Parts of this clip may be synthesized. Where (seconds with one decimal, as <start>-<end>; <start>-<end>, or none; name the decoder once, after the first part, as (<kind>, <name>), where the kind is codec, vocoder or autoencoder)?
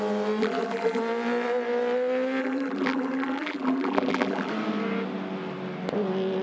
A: 0.4-1.0 (vocoder, BigVGAN v2); 2.4-4.5